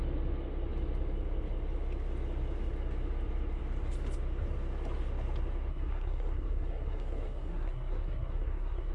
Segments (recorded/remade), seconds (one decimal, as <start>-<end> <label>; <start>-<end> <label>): 0.0-5.7 recorded; 5.7-8.9 remade